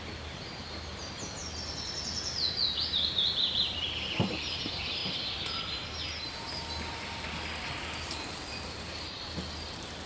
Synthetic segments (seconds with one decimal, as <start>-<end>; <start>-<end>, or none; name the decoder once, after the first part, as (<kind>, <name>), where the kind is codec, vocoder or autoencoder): 0.0-1.4 (vocoder, BigVGAN v2); 2.9-5.0; 8.5-10.1

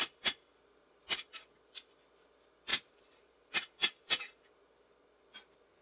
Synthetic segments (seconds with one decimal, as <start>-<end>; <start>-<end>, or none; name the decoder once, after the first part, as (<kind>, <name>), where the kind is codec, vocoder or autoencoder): 0.0-0.5 (vocoder, BigVGAN v2); 2.7-4.6

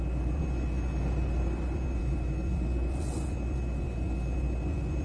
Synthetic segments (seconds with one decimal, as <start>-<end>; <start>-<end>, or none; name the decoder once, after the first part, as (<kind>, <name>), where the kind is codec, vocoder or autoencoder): none

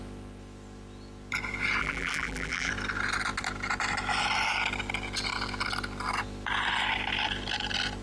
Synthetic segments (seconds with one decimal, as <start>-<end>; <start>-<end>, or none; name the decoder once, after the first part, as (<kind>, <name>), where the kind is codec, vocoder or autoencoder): 1.8-2.7 (vocoder, BigVGAN v2)

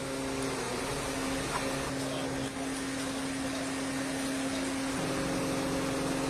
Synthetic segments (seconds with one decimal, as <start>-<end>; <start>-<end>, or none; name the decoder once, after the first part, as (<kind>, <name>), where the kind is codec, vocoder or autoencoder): none